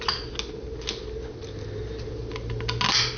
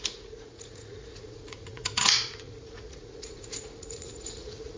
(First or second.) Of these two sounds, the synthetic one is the second